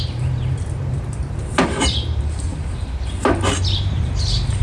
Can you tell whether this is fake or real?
fake